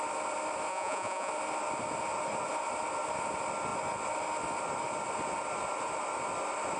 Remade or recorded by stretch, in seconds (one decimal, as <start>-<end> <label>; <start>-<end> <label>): 0.0-0.7 recorded; 0.7-1.3 remade; 1.3-6.8 recorded